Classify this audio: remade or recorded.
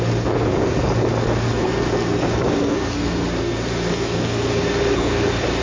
recorded